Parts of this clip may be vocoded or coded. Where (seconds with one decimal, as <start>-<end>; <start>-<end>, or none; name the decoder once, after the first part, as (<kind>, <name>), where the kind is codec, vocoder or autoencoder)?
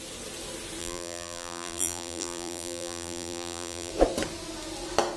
0.8-3.9 (vocoder, BigVGAN v2)